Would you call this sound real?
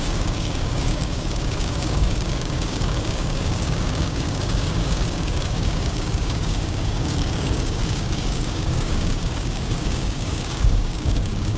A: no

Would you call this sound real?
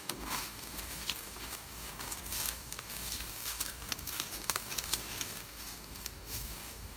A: no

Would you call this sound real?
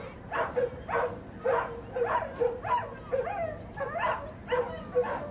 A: yes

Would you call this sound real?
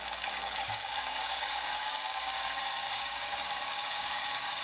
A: no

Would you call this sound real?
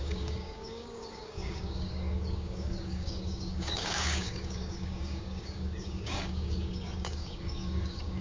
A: no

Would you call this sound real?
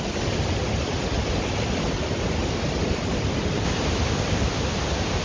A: yes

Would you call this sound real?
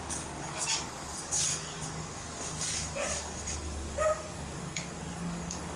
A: no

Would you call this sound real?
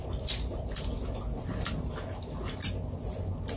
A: yes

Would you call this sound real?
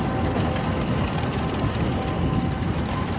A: yes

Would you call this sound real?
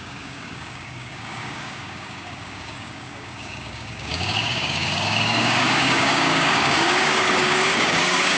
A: no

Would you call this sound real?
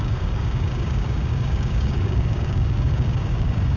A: no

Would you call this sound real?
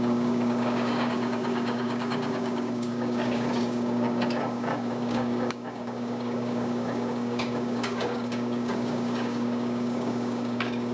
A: no